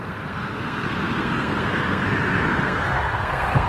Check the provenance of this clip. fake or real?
fake